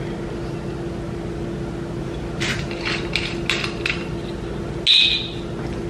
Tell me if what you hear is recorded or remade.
recorded